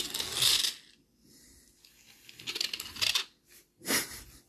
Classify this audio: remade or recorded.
recorded